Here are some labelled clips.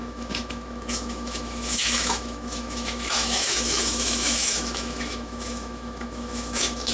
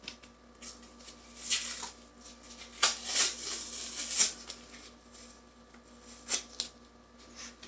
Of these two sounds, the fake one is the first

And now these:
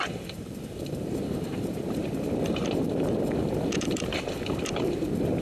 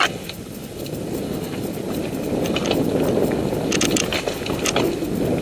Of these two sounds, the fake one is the first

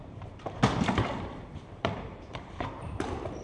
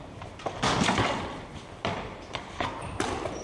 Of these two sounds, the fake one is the first